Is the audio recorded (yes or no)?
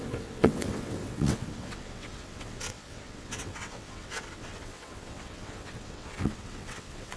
no